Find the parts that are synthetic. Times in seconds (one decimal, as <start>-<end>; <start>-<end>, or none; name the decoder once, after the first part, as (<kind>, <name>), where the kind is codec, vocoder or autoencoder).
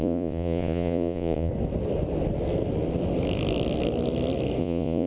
0.0-1.5 (vocoder, Vocos); 4.6-5.1